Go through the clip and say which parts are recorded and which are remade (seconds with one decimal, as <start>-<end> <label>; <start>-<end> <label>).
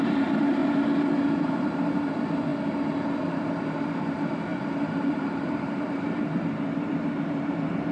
0.0-0.6 remade; 0.6-1.3 recorded; 1.3-2.5 remade; 2.5-3.2 recorded; 3.2-7.9 remade